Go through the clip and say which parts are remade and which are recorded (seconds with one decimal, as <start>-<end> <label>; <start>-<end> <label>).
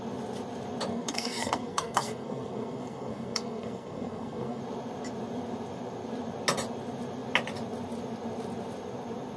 0.0-0.9 recorded; 0.9-4.6 remade; 4.6-9.4 recorded